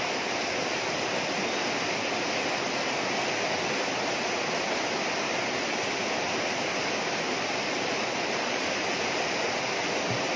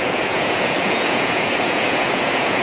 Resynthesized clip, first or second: second